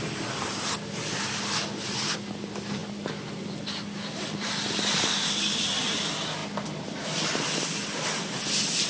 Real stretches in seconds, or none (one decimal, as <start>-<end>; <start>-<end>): 2.8-3.4; 6.4-7.6